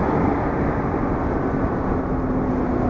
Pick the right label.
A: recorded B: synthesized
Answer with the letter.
A